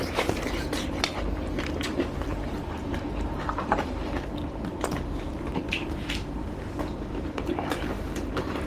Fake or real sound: fake